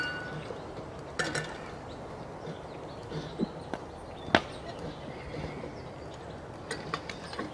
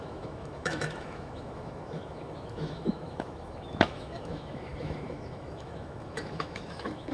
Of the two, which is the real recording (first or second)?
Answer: first